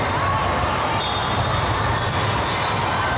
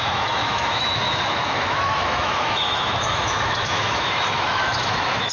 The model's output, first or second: second